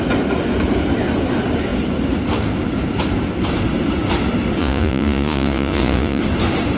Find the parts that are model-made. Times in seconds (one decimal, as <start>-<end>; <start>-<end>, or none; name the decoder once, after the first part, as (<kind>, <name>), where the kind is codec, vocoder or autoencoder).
4.6-6.2 (vocoder, Vocos)